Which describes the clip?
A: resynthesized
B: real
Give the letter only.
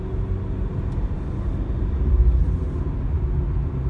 B